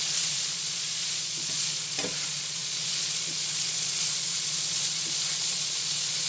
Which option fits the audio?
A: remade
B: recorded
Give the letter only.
A